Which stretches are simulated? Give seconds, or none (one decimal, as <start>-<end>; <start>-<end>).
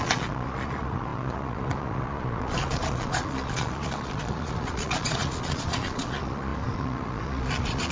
0.0-7.9